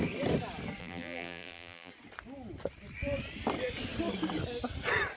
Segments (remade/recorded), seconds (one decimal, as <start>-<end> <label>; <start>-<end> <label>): 0.0-0.8 recorded; 0.8-1.9 remade; 1.9-5.2 recorded